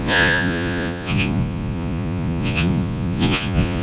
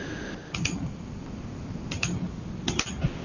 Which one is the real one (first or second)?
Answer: second